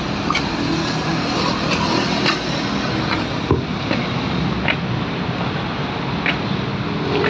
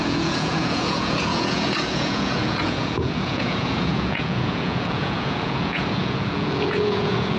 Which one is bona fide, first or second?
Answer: first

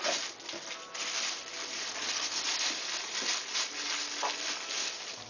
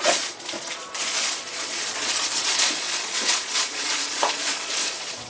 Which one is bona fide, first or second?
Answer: first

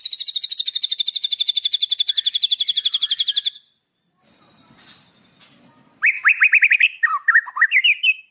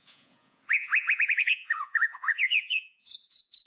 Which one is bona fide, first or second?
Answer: first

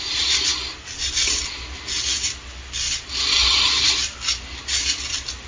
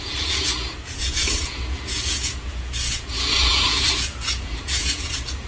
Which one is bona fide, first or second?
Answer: first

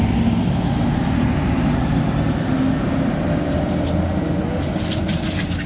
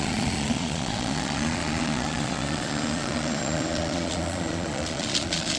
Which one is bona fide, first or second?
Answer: first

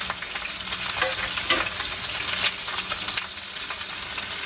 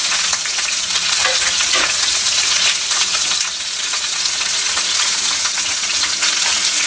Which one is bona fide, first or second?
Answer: first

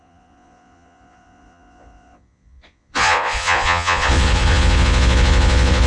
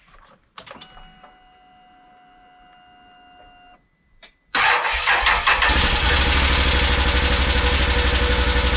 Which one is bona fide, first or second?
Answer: second